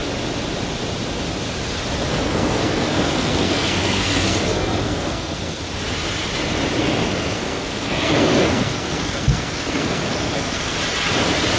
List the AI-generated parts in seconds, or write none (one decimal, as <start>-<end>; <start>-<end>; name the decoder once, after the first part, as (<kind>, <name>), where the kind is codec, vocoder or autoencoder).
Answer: 2.1-5.6 (codec, SNAC); 6.8-10.8